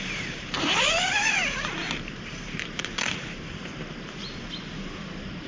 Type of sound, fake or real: fake